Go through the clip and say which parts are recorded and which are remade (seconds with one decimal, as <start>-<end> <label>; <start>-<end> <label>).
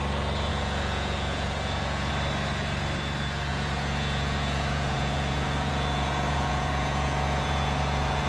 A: 0.0-0.5 recorded; 0.5-2.1 remade; 2.1-3.5 recorded; 3.5-8.3 remade